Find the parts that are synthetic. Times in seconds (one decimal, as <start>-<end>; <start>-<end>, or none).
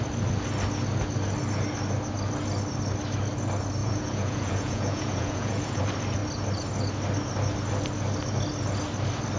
3.8-5.8